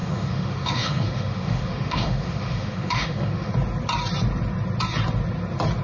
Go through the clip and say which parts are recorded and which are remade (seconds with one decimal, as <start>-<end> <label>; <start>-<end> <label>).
0.0-3.5 remade; 3.5-5.8 recorded

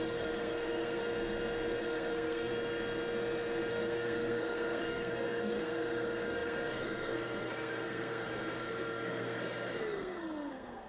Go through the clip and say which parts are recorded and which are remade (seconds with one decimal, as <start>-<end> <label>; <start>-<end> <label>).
0.0-1.0 remade; 1.0-1.8 recorded; 1.8-2.5 remade; 2.5-3.7 recorded; 3.7-10.9 remade